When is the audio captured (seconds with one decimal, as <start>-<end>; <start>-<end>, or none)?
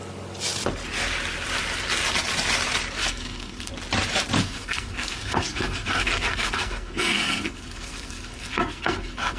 0.0-3.0; 3.7-4.4